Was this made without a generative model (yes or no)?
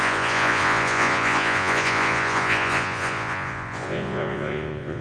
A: no